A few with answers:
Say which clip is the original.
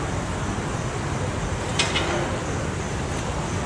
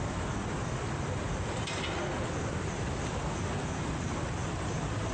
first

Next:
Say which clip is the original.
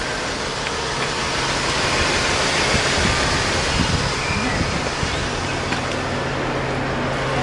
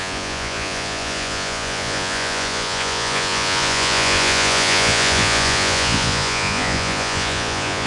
first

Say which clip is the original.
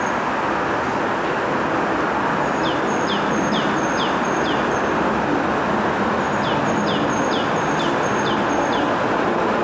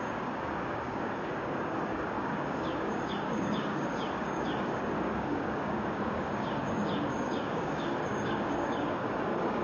first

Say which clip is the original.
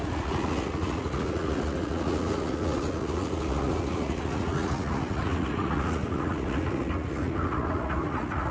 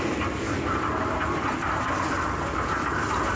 second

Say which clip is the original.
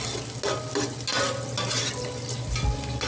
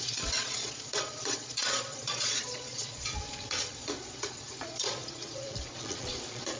first